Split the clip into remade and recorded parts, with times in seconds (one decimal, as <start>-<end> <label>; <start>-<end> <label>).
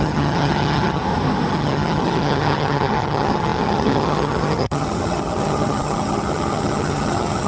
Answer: 0.0-1.0 remade; 1.0-1.5 recorded; 1.5-7.5 remade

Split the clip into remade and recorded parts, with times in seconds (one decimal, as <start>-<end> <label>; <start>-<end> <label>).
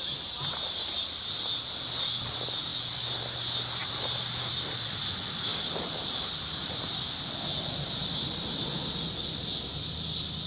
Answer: 0.0-3.8 recorded; 3.8-4.9 remade; 4.9-5.5 recorded; 5.5-7.4 remade; 7.4-10.5 recorded